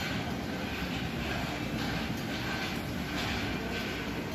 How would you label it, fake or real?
real